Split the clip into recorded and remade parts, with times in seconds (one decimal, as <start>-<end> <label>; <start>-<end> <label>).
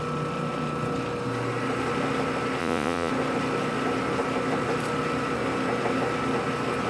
0.0-2.6 recorded; 2.6-3.1 remade; 3.1-6.9 recorded